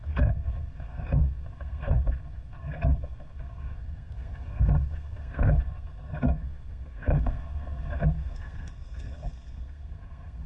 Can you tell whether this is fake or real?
fake